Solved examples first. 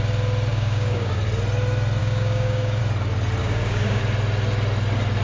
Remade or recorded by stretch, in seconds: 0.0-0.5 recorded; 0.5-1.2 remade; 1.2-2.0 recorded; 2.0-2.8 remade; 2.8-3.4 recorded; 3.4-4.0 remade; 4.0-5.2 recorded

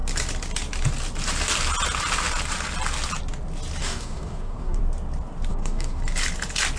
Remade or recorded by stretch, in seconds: 0.0-3.8 recorded; 3.8-4.8 remade; 4.8-5.5 recorded; 5.5-6.0 remade; 6.0-6.8 recorded